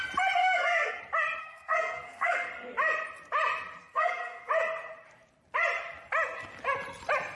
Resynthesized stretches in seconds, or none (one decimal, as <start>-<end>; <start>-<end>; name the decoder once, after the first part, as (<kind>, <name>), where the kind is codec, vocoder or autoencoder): 0.4-1.0 (codec, SNAC); 1.4-2.5; 3.8-4.5